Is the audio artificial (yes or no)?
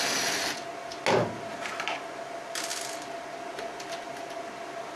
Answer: no